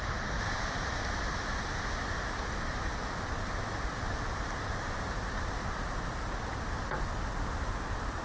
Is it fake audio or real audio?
real